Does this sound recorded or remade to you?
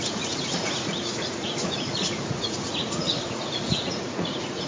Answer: remade